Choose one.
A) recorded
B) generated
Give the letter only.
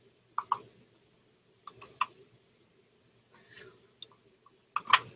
A